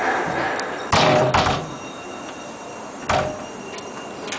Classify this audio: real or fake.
real